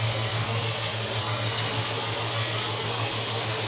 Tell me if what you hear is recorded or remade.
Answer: remade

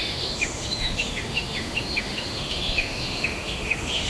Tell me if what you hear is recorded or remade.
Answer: remade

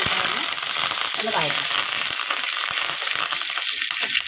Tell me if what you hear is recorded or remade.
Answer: recorded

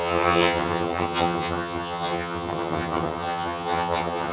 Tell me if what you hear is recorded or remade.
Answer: remade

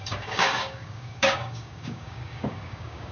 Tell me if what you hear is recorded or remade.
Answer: remade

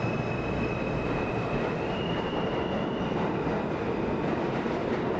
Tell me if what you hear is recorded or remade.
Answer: remade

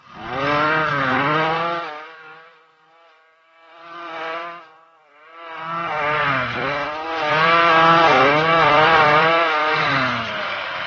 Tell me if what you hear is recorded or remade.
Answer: remade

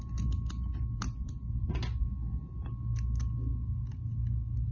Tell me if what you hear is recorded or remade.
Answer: recorded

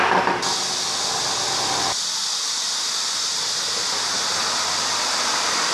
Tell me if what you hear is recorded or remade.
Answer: recorded